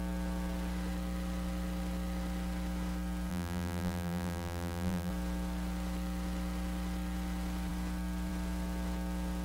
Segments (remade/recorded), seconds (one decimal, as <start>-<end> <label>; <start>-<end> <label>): 0.0-3.3 recorded; 3.3-5.1 remade; 5.1-9.4 recorded